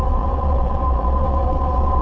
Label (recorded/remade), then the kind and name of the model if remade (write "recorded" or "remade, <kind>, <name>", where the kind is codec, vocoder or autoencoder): remade, vocoder, Vocos